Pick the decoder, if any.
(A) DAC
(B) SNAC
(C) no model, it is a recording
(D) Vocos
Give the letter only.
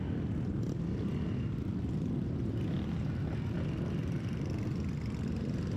C